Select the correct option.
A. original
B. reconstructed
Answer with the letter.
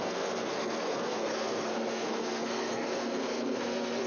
B